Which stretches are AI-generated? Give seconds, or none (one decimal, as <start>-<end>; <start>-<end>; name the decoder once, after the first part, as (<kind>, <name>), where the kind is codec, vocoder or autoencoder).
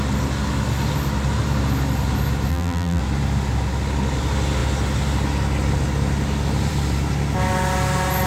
2.5-3.0 (vocoder, BigVGAN v2)